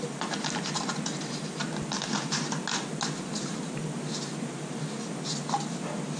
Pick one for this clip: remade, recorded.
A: recorded